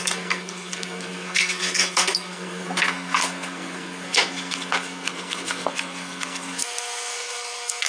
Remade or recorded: remade